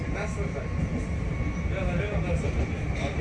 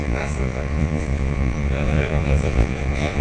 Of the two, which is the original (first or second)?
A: first